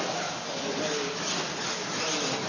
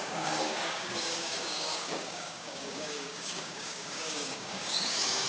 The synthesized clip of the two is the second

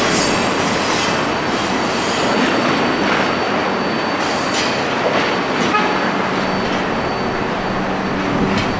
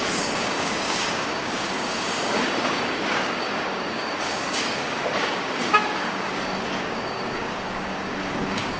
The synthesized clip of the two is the second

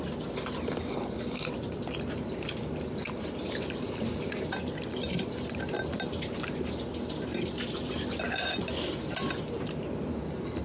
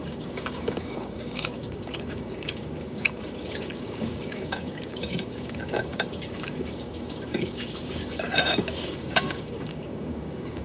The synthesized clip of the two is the second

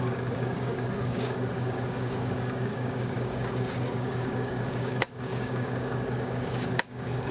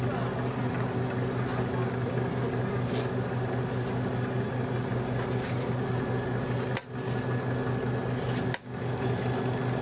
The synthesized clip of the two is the first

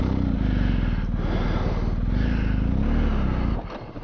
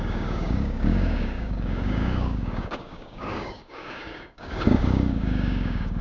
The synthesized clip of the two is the second